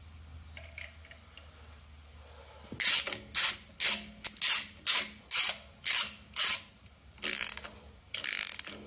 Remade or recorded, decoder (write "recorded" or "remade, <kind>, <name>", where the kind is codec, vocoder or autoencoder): recorded